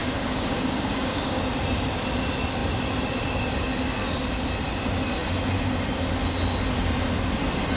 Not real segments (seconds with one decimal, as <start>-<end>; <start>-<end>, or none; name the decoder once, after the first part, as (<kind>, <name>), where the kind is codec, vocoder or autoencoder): 0.0-1.4 (codec, DAC)